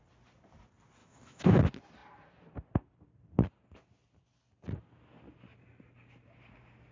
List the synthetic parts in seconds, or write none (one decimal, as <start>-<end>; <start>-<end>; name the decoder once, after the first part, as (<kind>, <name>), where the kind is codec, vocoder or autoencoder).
1.0-1.6 (autoencoder, DAC-VAE)